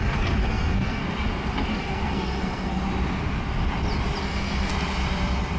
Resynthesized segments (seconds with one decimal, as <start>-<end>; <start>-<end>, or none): 0.0-1.0; 1.7-2.8; 4.2-4.7